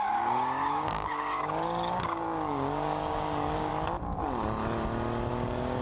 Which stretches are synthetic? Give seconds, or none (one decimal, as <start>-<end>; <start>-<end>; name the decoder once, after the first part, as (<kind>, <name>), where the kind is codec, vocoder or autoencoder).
0.0-3.7 (codec, DAC); 5.3-5.8